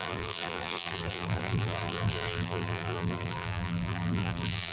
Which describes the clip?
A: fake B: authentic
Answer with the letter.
A